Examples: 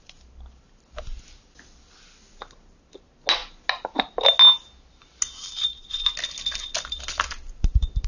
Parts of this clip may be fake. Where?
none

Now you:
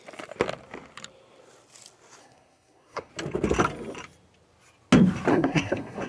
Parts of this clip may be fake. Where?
2.2-3.1 (codec, SNAC); 5.3-6.1